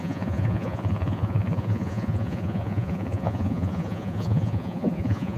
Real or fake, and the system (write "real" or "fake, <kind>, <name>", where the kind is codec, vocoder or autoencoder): fake, vocoder, Vocos